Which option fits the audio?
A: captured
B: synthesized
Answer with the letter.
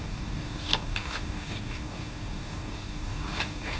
B